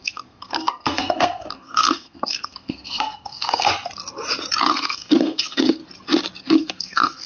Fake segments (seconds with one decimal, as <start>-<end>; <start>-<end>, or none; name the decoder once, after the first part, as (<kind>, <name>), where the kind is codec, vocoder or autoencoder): 0.0-3.7 (codec, SNAC); 4.7-5.8; 6.4-7.3